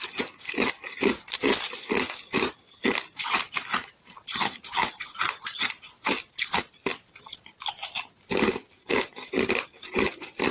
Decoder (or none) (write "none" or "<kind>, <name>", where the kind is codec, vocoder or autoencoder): none